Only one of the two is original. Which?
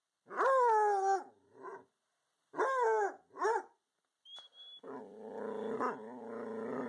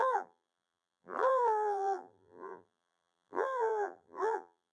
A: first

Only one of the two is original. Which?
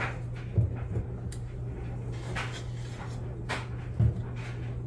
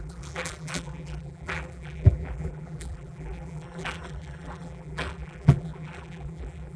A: first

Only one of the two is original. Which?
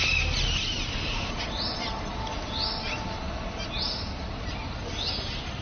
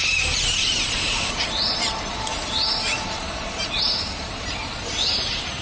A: first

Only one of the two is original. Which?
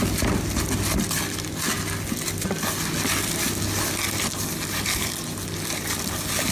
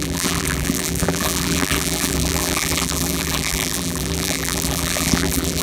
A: first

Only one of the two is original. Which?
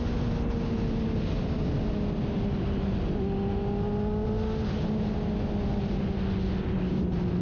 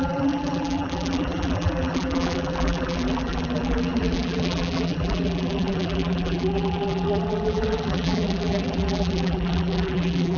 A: first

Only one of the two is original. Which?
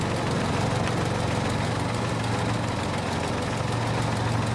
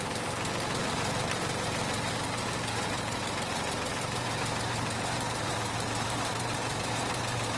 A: first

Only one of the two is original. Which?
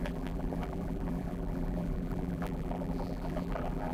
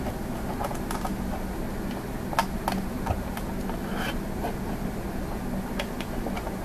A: second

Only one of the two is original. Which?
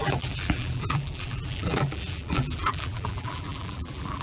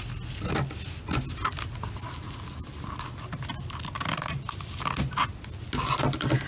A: second